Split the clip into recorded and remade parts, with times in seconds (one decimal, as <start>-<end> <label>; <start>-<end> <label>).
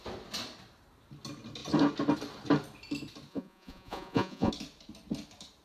0.0-3.3 recorded; 3.3-4.5 remade; 4.5-5.6 recorded